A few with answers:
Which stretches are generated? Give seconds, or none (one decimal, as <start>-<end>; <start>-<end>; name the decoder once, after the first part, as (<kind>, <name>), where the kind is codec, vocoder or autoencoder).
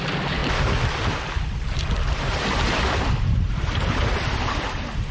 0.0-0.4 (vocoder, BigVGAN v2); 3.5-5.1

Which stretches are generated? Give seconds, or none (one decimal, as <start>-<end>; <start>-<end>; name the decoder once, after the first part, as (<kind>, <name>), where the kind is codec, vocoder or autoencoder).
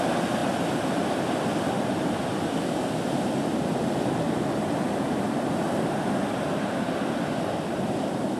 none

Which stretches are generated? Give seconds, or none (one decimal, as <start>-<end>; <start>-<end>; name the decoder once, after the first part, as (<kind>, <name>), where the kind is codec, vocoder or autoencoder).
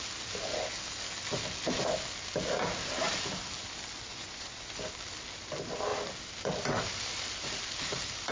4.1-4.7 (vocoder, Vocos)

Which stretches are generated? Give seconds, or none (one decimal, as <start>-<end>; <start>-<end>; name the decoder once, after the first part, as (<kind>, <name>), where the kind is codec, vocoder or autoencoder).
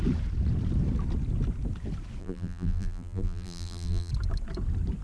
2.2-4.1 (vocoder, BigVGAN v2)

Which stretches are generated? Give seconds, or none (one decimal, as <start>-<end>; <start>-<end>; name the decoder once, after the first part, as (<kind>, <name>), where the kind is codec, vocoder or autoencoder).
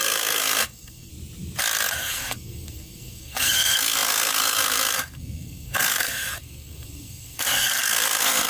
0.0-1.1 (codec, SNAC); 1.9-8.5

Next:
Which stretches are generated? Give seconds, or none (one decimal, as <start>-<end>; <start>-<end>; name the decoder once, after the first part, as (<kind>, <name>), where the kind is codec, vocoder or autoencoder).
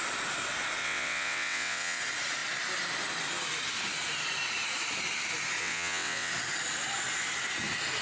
0.8-2.0 (vocoder, WaveNeXt); 5.6-6.3